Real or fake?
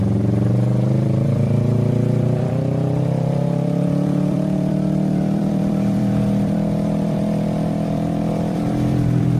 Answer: fake